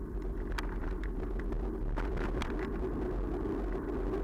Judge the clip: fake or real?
real